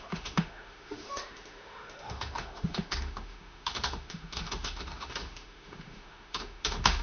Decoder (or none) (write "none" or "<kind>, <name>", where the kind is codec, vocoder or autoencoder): autoencoder, DAC-VAE